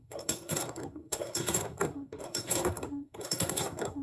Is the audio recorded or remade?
remade